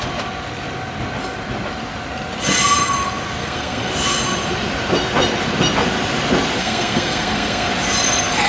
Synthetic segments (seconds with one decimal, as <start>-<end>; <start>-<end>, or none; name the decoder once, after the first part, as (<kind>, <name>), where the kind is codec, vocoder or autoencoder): 3.4-3.9 (codec, SNAC); 6.6-7.7